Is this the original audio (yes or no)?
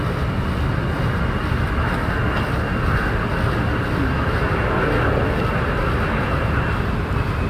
yes